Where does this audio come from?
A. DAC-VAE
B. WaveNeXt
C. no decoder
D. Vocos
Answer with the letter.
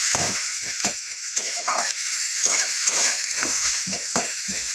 A